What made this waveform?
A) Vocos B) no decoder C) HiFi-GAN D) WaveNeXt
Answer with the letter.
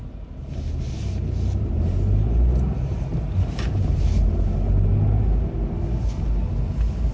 B